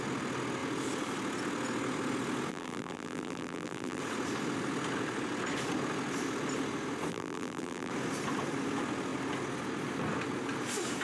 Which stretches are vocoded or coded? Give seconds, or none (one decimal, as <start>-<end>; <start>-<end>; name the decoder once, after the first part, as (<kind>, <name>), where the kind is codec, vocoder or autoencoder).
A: 2.5-4.0 (vocoder, BigVGAN v2); 7.1-7.9

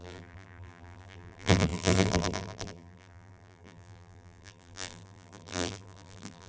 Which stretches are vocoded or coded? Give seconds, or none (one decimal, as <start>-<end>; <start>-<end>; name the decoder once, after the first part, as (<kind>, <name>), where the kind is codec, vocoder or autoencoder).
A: 0.0-6.5 (vocoder, BigVGAN v2)

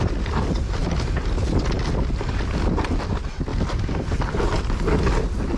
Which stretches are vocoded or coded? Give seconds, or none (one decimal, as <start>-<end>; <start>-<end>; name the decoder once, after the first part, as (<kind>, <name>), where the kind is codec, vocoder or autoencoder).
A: none

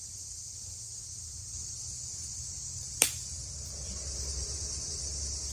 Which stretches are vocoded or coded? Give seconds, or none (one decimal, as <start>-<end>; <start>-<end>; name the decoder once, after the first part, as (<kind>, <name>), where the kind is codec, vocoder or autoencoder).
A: 4.4-5.0 (vocoder, BigVGAN v2)

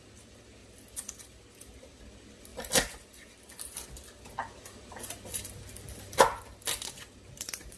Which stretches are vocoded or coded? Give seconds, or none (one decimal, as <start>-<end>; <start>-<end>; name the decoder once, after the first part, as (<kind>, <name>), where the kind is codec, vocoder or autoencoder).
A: 0.6-2.0 (vocoder, BigVGAN v2); 2.5-3.8; 4.4-6.2